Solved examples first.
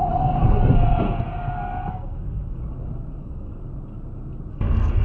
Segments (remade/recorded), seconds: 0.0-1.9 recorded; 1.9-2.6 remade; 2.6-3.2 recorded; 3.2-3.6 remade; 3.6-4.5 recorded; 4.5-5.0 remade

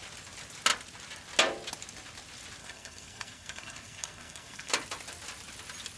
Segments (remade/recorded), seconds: 0.0-2.6 recorded; 2.6-4.7 remade; 4.7-6.0 recorded

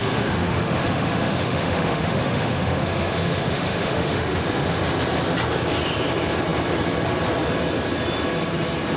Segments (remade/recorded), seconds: 0.0-4.8 remade; 4.8-9.0 recorded

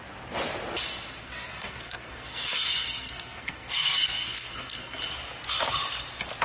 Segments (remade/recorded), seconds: 0.0-1.2 recorded; 1.2-5.0 remade; 5.0-6.4 recorded

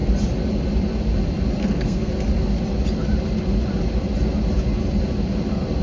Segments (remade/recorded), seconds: 0.0-1.6 recorded; 1.6-2.1 remade; 2.1-5.8 recorded